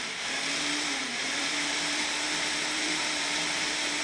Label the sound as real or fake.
fake